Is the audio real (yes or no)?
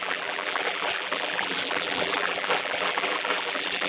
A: no